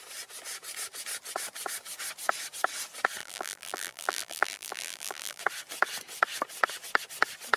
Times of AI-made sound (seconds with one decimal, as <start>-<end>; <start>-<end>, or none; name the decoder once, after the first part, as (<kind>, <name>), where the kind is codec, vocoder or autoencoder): 3.2-5.4 (vocoder, BigVGAN v2)